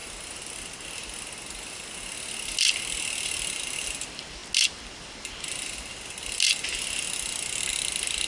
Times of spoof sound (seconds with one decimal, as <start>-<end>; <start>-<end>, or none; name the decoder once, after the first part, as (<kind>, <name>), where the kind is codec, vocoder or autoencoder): none